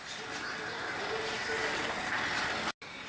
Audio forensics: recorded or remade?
recorded